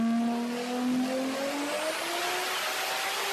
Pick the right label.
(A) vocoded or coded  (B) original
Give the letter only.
B